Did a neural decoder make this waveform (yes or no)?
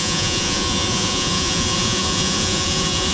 yes